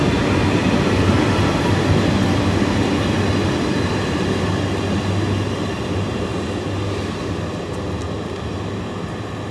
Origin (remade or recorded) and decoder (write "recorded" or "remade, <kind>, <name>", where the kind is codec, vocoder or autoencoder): recorded